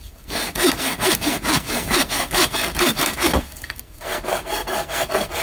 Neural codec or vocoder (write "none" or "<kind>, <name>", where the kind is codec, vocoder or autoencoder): codec, SNAC